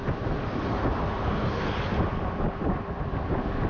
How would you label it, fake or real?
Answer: real